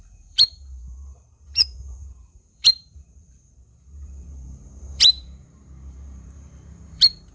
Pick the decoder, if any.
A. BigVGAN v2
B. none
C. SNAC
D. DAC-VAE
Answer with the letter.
A